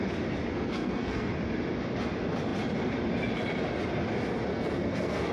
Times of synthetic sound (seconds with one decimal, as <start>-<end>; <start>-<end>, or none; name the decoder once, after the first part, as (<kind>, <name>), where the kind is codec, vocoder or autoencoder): 0.5-1.3 (codec, SNAC); 4.5-5.3